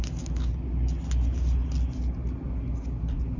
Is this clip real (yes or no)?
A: yes